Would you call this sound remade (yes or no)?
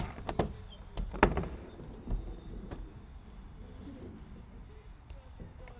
no